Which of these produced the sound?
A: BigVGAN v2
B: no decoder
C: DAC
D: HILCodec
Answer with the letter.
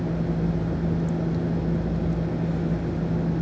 B